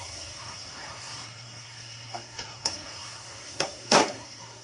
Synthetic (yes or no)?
yes